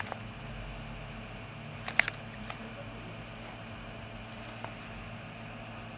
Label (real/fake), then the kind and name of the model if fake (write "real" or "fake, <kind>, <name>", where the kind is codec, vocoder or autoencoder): real